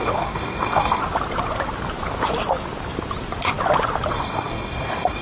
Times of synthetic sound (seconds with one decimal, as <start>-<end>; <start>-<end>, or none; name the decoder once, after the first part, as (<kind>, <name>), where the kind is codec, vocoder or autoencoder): 0.0-1.0 (codec, DAC); 4.1-5.2